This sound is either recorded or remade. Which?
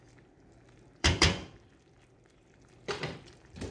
remade